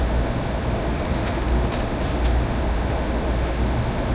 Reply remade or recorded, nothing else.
remade